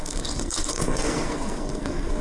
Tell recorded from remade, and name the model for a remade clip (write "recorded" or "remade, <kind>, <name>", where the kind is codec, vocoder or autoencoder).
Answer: remade, codec, SNAC